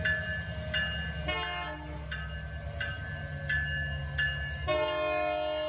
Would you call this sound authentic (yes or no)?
yes